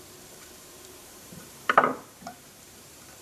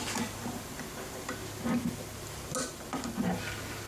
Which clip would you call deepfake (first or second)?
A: first